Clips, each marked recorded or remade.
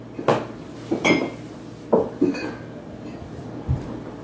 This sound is recorded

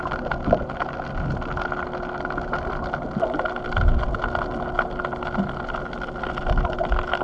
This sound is recorded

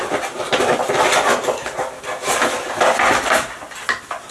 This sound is recorded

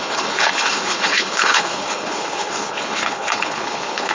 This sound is remade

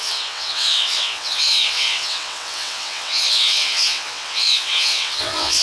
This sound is remade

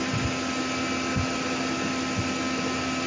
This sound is recorded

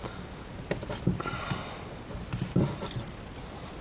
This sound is recorded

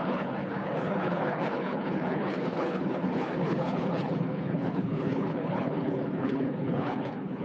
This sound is remade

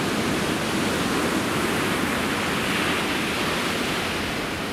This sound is recorded